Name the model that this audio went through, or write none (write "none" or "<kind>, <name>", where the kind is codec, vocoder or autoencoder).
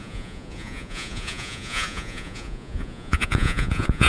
vocoder, Vocos